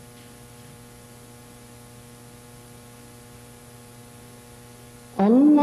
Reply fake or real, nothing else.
real